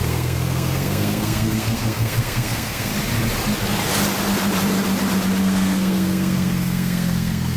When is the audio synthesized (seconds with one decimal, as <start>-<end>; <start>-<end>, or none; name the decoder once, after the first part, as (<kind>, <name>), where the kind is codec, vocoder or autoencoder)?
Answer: 0.0-2.9 (codec, SNAC); 5.4-7.6